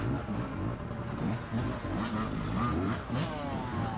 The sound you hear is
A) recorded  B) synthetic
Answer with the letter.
A